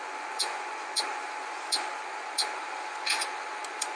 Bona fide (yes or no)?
no